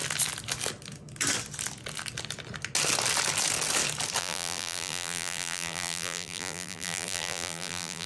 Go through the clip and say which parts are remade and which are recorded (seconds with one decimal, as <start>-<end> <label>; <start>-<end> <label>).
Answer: 0.0-4.2 recorded; 4.2-8.1 remade